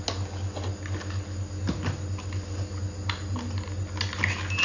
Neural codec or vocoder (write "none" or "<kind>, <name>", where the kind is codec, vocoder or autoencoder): none